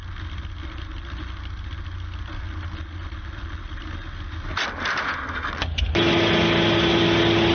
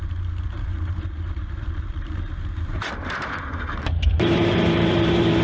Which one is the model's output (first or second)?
second